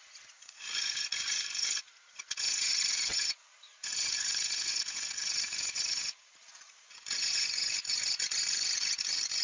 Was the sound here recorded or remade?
remade